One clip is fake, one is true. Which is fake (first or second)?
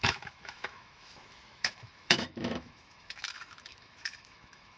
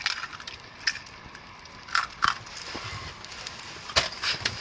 first